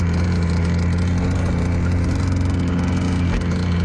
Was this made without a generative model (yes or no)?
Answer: yes